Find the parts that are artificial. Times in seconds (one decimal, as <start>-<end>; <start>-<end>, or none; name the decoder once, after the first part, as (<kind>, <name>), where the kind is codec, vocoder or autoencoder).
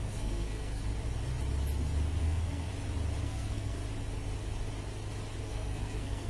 0.0-0.8 (codec, SNAC); 2.2-2.7; 3.2-3.8; 5.4-6.3